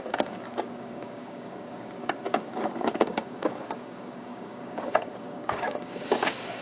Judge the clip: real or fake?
fake